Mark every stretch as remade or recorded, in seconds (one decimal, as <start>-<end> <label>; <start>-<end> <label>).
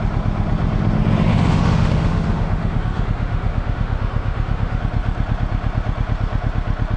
0.0-1.3 recorded; 1.3-4.8 remade; 4.8-7.0 recorded